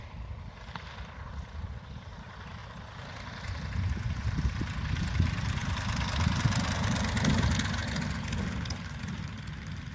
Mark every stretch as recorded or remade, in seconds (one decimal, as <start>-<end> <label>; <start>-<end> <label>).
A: 0.0-9.9 recorded